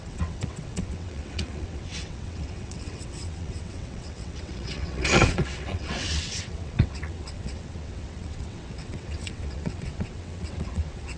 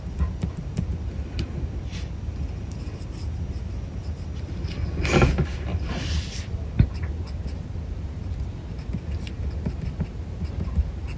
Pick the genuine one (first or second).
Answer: second